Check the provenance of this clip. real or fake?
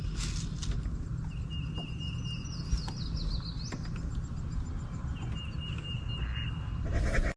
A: real